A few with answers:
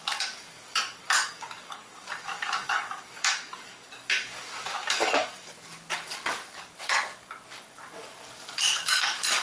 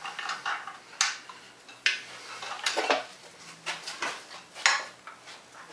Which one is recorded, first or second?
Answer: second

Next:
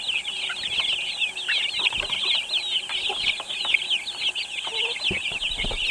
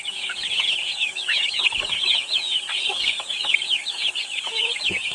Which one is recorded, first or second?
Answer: first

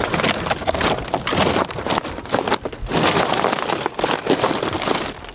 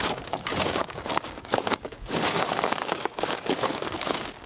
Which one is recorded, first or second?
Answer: first